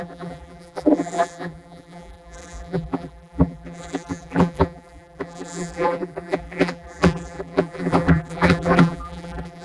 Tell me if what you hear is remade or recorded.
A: remade